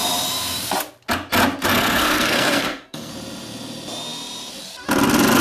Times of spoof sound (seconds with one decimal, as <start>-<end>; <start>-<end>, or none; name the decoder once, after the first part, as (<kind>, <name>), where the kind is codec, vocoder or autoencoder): 1.7-3.1 (codec, SNAC)